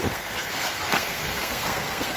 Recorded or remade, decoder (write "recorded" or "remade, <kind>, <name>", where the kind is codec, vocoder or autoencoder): remade, codec, SNAC